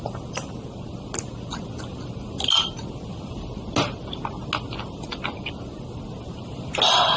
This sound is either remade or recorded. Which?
recorded